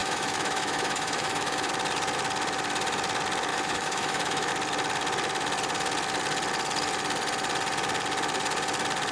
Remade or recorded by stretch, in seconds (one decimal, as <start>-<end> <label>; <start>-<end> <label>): 0.0-1.7 remade; 1.7-3.5 recorded; 3.5-4.5 remade; 4.5-9.1 recorded